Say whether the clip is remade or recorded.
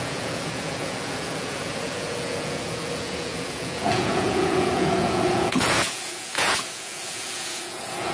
remade